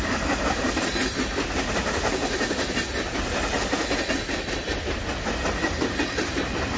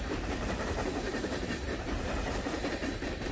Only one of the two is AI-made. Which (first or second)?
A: second